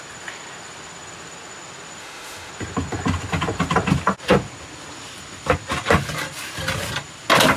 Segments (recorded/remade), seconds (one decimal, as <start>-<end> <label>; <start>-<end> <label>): 0.0-2.0 recorded; 2.0-2.5 remade; 2.5-7.6 recorded